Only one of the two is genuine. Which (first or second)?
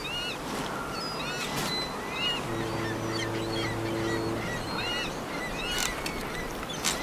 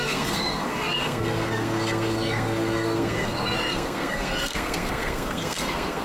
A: first